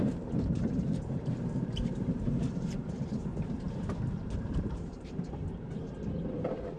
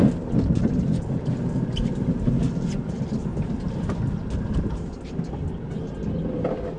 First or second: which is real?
second